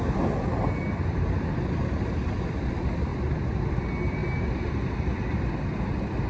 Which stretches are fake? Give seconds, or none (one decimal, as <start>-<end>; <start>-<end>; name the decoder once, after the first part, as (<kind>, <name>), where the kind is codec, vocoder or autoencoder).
none